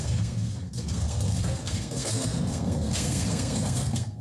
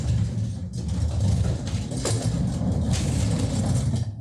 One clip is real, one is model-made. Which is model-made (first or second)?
first